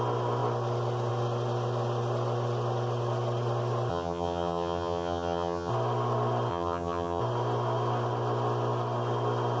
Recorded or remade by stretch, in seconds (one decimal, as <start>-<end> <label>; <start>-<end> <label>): 0.0-3.9 recorded; 3.9-5.7 remade; 5.7-6.5 recorded; 6.5-7.2 remade; 7.2-9.6 recorded